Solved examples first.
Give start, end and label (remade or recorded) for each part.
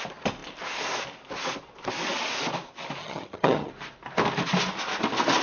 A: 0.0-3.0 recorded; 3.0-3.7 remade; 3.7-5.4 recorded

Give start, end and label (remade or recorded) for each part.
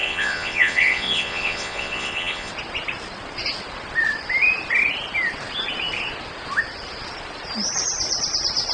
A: 0.0-2.5 remade; 2.5-8.7 recorded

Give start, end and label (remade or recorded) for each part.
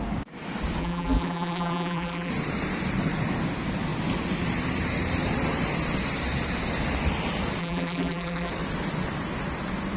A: 0.0-0.8 recorded; 0.8-2.3 remade; 2.3-7.6 recorded; 7.6-8.5 remade; 8.5-10.0 recorded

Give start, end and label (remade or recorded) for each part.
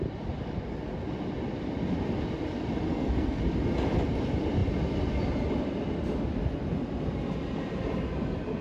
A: 0.0-2.9 recorded; 2.9-3.4 remade; 3.4-8.6 recorded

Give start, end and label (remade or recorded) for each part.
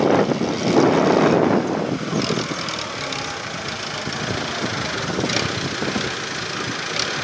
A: 0.0-7.2 recorded